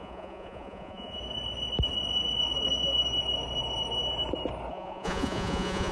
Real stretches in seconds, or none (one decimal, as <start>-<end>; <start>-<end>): 1.2-4.7